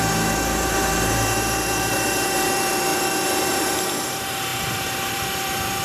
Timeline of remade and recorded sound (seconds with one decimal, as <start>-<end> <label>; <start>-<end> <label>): 0.0-5.8 remade